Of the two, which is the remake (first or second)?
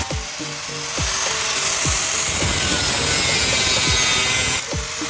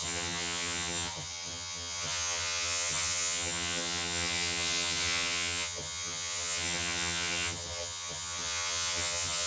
second